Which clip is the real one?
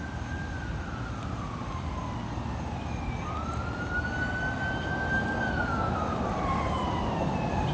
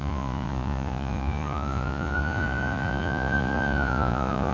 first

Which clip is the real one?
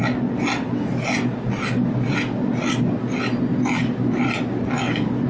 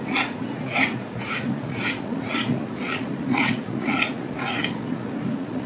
first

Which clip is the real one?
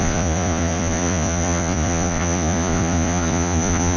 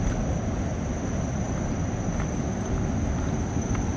second